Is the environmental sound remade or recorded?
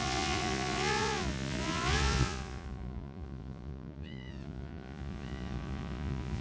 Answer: remade